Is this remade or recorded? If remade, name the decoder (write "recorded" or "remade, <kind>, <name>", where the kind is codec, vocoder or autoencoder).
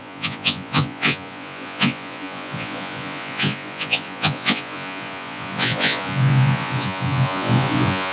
remade, vocoder, Vocos